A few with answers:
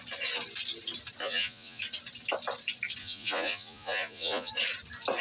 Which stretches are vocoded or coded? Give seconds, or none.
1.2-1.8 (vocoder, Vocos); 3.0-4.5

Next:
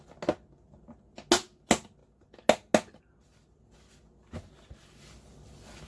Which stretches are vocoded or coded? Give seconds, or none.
none

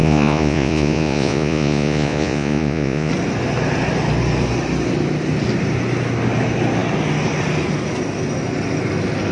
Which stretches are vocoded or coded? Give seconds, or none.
0.0-3.1 (vocoder, Vocos)

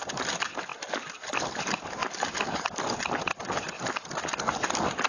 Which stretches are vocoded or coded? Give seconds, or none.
none